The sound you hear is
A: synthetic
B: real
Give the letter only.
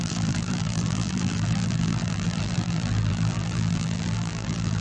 A